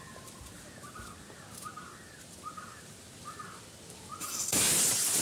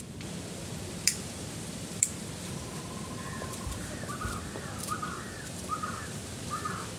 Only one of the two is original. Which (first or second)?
first